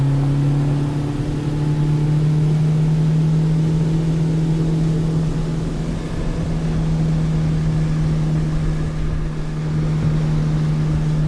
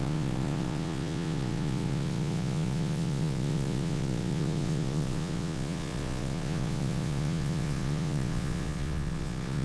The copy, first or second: second